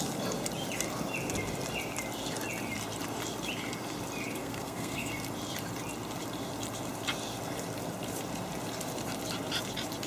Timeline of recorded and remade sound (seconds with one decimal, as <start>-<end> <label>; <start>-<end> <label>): 0.0-4.4 recorded; 4.4-5.1 remade; 5.1-10.1 recorded

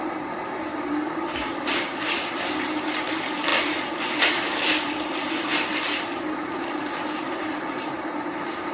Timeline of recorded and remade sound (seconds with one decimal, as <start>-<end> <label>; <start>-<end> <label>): 0.0-8.7 remade

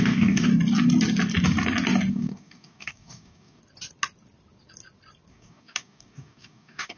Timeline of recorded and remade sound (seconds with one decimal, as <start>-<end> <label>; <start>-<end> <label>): 0.0-0.5 remade; 0.5-2.1 recorded; 2.1-3.6 remade; 3.6-5.3 recorded; 5.3-7.0 remade

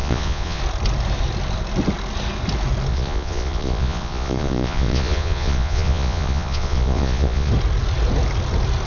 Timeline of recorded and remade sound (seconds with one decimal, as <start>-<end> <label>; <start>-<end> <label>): 0.0-0.6 remade; 0.6-2.9 recorded; 2.9-7.5 remade; 7.5-8.9 recorded

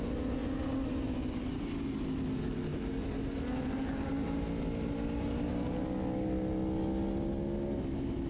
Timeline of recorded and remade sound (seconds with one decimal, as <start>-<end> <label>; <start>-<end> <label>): 0.0-8.3 recorded

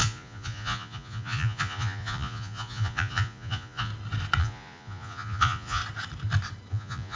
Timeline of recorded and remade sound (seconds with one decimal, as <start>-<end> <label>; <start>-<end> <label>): 0.0-3.9 remade; 3.9-4.4 recorded; 4.4-5.8 remade; 5.8-6.7 recorded; 6.7-7.2 remade